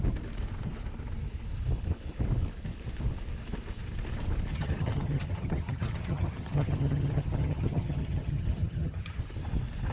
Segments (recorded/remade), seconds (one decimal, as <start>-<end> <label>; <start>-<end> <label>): 0.0-4.5 recorded; 4.5-9.2 remade; 9.2-9.9 recorded